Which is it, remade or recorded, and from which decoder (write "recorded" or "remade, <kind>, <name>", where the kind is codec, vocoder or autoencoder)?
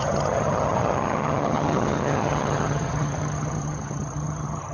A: remade, vocoder, HiFi-GAN